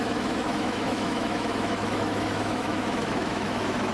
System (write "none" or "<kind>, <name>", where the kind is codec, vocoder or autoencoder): autoencoder, DAC-VAE